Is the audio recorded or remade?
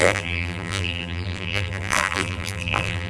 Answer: remade